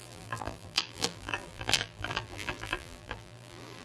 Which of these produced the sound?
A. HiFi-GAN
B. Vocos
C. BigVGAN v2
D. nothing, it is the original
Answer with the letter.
C